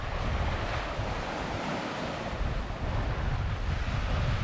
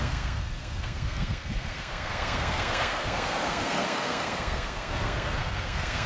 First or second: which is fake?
second